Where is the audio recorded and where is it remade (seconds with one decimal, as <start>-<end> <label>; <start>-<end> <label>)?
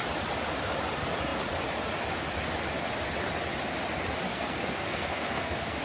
0.0-4.3 recorded; 4.3-5.8 remade